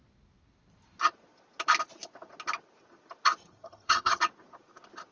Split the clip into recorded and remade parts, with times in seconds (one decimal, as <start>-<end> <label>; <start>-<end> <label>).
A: 0.0-3.4 recorded; 3.4-4.2 remade; 4.2-5.1 recorded